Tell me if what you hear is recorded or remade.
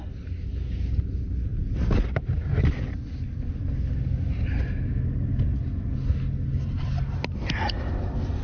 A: recorded